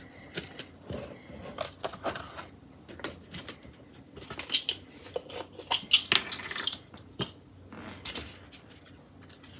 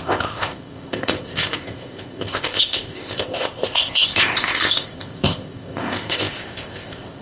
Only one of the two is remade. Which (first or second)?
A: second